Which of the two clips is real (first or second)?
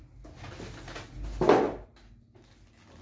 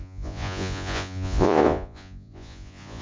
first